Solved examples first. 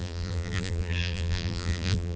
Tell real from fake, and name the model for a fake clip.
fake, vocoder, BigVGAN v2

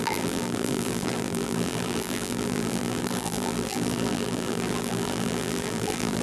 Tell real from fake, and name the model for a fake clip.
fake, vocoder, BigVGAN v2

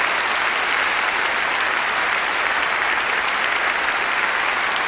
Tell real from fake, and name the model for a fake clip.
real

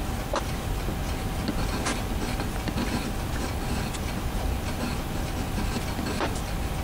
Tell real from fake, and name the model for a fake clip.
real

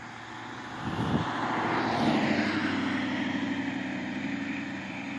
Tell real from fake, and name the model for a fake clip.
real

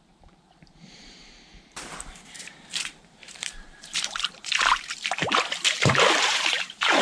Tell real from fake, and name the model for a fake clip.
fake, vocoder, BigVGAN v2